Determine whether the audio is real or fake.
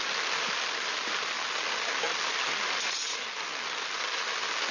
real